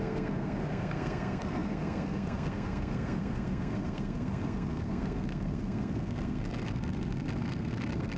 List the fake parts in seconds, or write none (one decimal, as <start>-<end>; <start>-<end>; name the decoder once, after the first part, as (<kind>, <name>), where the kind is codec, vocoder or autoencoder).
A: 0.0-8.2 (codec, SNAC)